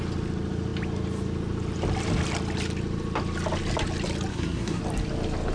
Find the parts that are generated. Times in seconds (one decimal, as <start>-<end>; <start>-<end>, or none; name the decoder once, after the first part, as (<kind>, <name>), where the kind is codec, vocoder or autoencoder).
4.3-4.8 (codec, SNAC)